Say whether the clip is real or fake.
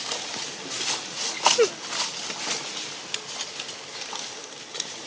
real